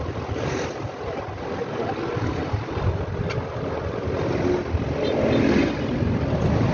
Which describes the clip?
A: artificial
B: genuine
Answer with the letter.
B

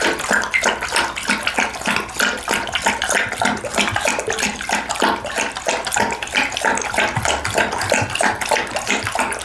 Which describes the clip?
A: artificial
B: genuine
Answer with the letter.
B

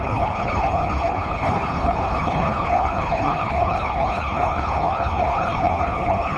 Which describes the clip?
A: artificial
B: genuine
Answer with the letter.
A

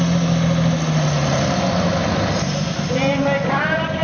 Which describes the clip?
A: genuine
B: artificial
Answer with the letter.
A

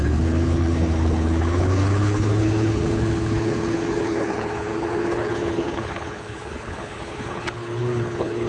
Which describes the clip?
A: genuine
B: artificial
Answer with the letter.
B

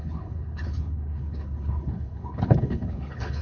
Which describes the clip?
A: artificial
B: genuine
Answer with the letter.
A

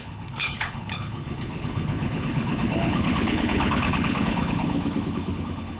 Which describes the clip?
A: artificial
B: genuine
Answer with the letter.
A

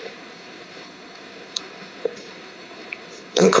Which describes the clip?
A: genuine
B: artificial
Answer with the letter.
B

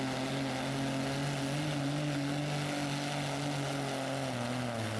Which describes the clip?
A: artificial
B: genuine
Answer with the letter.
B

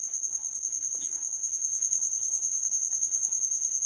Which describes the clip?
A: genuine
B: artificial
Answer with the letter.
B